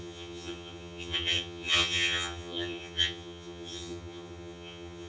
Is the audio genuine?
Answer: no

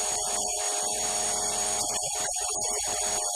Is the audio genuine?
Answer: no